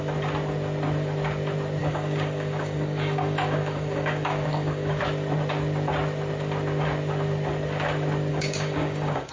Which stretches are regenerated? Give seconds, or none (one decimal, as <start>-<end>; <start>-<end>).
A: 1.8-5.0; 8.3-9.3